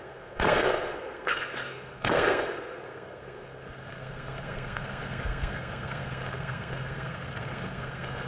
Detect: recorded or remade remade